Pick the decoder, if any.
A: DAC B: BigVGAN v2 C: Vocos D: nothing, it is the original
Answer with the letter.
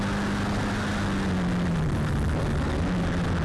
D